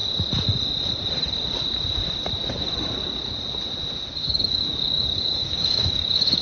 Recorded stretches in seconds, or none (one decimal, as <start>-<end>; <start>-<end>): 0.0-4.2